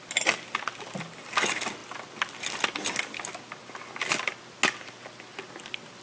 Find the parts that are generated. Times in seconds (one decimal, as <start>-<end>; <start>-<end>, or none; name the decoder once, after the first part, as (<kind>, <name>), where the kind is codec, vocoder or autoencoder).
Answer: none